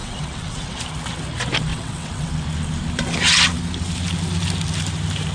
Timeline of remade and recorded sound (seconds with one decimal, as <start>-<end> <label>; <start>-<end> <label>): 0.0-0.8 remade; 0.8-1.7 recorded; 1.7-2.3 remade; 2.3-5.3 recorded